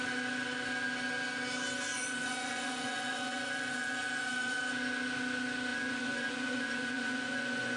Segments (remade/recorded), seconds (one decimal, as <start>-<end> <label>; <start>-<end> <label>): 0.0-1.9 recorded; 1.9-4.5 remade; 4.5-5.7 recorded; 5.7-7.8 remade